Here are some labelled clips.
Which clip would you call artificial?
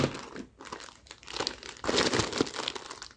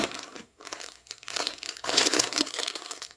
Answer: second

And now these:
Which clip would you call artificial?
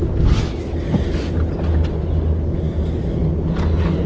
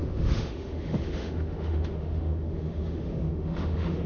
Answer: second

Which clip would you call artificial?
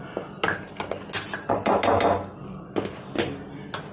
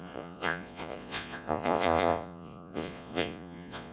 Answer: second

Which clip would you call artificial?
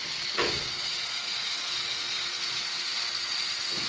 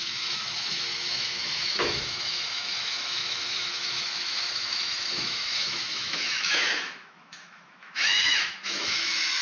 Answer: second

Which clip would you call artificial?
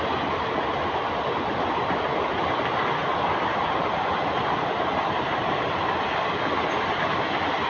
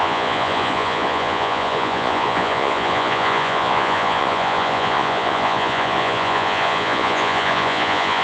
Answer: second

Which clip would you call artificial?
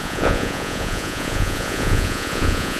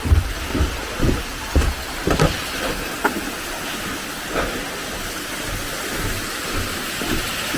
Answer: first